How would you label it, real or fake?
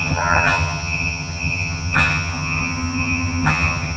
fake